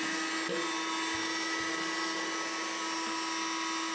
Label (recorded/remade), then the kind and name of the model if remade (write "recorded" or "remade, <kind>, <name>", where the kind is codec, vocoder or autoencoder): recorded